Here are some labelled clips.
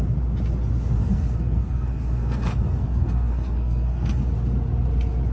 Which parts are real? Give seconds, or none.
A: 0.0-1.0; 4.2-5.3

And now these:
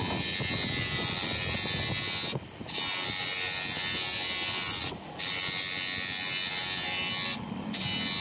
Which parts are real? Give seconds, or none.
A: 0.0-8.2

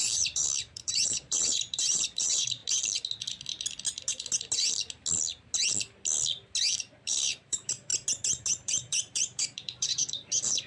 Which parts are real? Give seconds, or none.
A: 2.6-6.8; 7.9-8.5

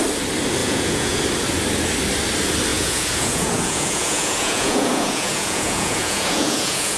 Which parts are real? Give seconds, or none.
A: 0.0-0.6; 1.2-2.7

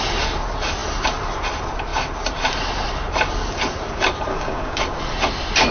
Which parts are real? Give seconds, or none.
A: 0.0-4.3; 4.8-5.7

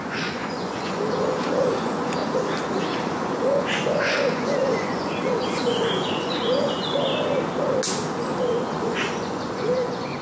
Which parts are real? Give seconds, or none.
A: 2.2-3.1; 7.1-8.4

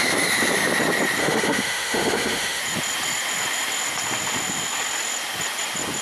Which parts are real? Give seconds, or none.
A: 0.0-1.2; 2.6-6.0